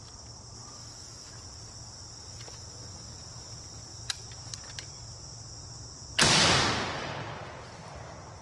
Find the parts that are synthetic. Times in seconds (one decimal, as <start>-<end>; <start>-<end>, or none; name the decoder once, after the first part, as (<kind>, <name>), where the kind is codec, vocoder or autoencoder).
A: 0.8-1.3 (autoencoder, DAC-VAE)